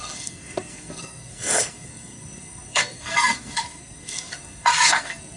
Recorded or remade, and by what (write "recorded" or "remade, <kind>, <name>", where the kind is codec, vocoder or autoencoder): remade, codec, SNAC